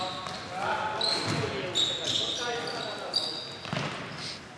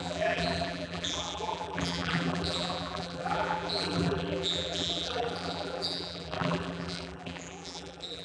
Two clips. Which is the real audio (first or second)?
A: first